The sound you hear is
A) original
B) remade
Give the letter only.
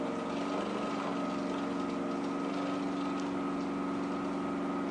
A